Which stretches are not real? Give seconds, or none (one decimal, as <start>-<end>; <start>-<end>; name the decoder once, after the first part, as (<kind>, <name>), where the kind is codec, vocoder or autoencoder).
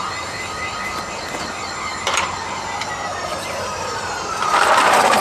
1.9-5.2 (vocoder, BigVGAN v2)